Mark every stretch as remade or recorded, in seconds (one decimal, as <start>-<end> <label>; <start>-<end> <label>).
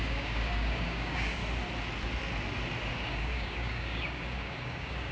0.0-1.4 remade; 1.4-2.9 recorded; 2.9-5.1 remade